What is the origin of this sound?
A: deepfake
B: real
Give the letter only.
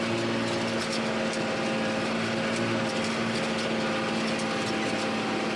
B